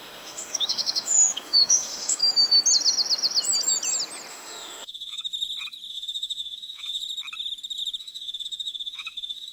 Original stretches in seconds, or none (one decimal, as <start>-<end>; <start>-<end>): 2.2-4.3; 5.3-5.9; 7.0-8.0